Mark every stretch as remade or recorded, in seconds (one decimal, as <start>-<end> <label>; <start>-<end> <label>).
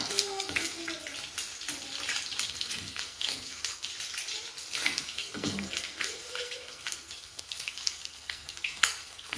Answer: 0.0-0.8 remade; 0.8-2.4 recorded; 2.4-3.9 remade; 3.9-4.7 recorded; 4.7-9.4 remade